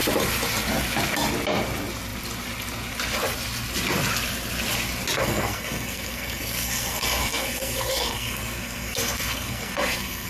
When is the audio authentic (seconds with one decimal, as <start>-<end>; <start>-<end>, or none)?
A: 0.0-5.2